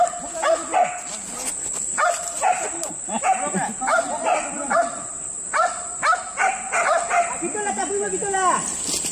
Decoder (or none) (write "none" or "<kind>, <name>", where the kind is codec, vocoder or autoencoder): none